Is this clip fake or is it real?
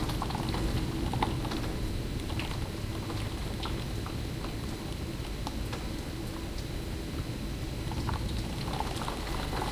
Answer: real